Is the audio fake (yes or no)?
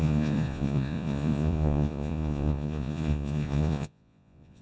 yes